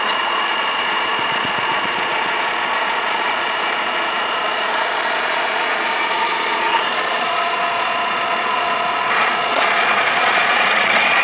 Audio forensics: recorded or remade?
remade